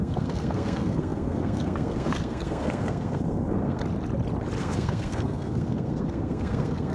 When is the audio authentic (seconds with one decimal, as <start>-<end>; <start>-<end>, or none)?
3.8-4.6